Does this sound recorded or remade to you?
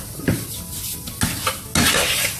recorded